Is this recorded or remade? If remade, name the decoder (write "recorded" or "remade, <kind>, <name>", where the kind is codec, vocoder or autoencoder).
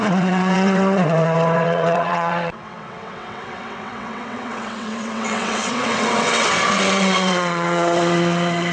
remade, vocoder, WaveNeXt